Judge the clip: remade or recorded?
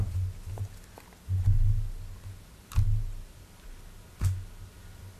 recorded